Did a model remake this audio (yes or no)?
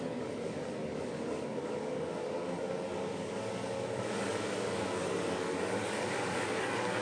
yes